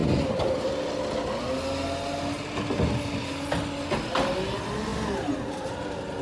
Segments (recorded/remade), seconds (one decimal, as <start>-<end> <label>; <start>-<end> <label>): 0.0-6.2 recorded